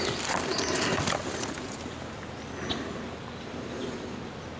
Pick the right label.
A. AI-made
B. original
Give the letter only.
B